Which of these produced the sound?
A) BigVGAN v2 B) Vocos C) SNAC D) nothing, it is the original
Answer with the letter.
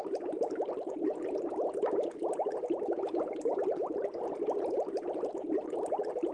D